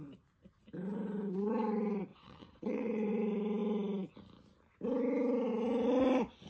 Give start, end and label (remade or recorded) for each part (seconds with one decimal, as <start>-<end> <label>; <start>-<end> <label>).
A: 0.0-2.1 recorded; 2.1-3.1 remade; 3.1-6.5 recorded